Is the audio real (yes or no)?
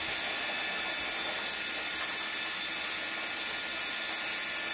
yes